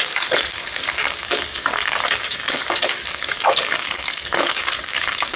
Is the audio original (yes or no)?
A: no